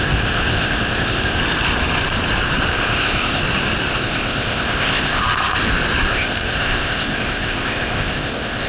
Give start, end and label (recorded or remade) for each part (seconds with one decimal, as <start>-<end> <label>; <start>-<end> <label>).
0.0-1.4 remade; 1.4-2.7 recorded; 2.7-3.4 remade; 3.4-3.9 recorded; 3.9-5.2 remade; 5.2-6.1 recorded; 6.1-8.7 remade